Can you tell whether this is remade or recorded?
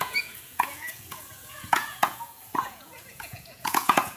remade